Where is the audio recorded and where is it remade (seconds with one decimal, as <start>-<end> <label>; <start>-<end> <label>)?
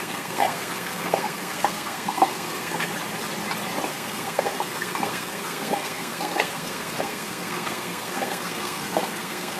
0.0-2.9 remade; 2.9-3.9 recorded; 3.9-9.6 remade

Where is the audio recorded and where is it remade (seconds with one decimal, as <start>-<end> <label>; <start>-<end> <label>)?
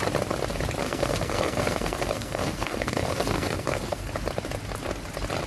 0.0-0.8 recorded; 0.8-4.1 remade; 4.1-5.5 recorded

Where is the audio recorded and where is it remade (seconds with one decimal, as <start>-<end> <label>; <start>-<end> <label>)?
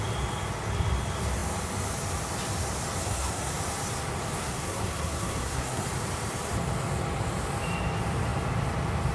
0.0-3.0 recorded; 3.0-3.5 remade; 3.5-4.4 recorded; 4.4-5.9 remade; 5.9-9.1 recorded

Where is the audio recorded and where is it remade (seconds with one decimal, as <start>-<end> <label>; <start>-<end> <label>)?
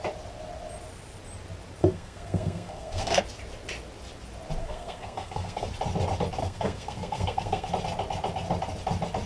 0.0-1.8 recorded; 1.8-3.2 remade; 3.2-4.6 recorded; 4.6-5.7 remade; 5.7-6.4 recorded; 6.4-7.7 remade; 7.7-9.3 recorded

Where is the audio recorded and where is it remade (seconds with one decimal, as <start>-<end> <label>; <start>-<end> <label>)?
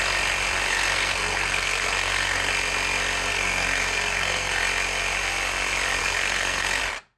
0.0-0.7 recorded; 0.7-2.5 remade; 2.5-3.3 recorded; 3.3-4.6 remade; 4.6-6.0 recorded; 6.0-6.8 remade; 6.8-7.2 recorded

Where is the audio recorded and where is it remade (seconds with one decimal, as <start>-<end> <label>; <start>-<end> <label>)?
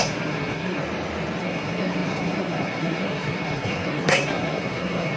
0.0-0.8 remade; 0.8-1.4 recorded; 1.4-5.2 remade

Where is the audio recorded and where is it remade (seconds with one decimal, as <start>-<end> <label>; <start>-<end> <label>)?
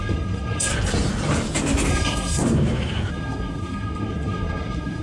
0.0-0.7 remade; 0.7-1.9 recorded; 1.9-2.4 remade; 2.4-3.1 recorded; 3.1-5.0 remade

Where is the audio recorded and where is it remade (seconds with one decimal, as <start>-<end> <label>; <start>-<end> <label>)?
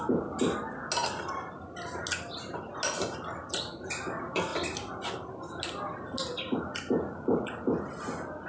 0.0-8.5 recorded